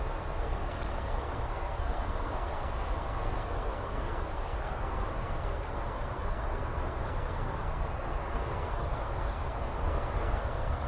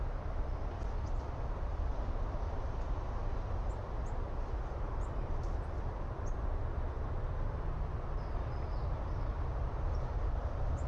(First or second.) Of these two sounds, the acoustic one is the second